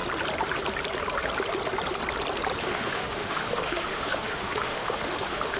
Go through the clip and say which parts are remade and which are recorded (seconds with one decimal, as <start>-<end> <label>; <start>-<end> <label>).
0.0-2.6 recorded; 2.6-5.6 remade